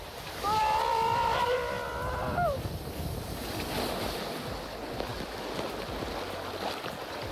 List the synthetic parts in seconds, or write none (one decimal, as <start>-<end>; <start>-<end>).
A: 0.0-1.9; 2.5-7.3